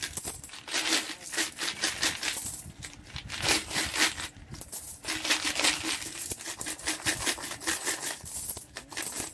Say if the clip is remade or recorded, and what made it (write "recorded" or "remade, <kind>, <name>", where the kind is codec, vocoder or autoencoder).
recorded